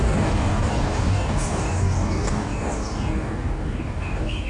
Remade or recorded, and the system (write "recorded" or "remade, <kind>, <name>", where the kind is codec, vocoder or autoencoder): remade, codec, DAC